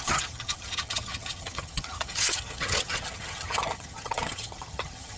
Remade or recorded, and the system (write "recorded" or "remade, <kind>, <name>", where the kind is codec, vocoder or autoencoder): remade, vocoder, HiFi-GAN